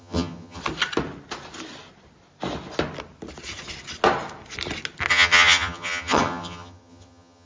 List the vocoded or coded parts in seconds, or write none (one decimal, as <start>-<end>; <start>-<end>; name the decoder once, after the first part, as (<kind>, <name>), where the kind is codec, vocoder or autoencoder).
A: 0.0-0.6 (vocoder, HiFi-GAN); 5.1-7.5